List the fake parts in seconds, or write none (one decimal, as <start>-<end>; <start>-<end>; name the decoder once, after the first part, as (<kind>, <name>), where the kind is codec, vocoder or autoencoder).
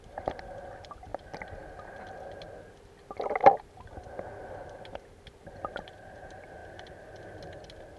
none